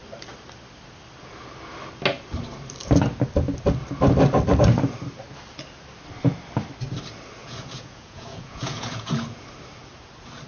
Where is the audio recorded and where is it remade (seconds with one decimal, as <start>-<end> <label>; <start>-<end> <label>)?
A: 0.0-7.4 recorded; 7.4-9.4 remade; 9.4-10.5 recorded